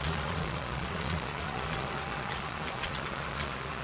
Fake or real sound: fake